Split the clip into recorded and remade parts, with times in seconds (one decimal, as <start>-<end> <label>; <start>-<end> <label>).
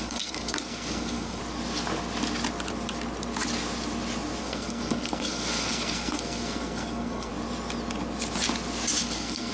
0.0-1.4 remade; 1.4-4.4 recorded; 4.4-7.3 remade; 7.3-9.0 recorded; 9.0-9.5 remade